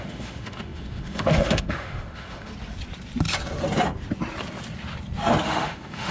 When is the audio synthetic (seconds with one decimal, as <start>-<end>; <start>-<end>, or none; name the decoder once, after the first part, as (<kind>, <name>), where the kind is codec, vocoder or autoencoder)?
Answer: 0.0-2.5 (autoencoder, DAC-VAE); 5.4-6.1